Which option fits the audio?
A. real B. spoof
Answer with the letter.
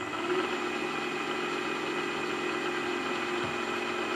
A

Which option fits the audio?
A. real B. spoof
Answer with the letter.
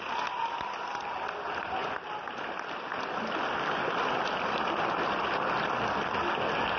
A